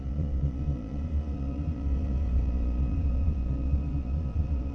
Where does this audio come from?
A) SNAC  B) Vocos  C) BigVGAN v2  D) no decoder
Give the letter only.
B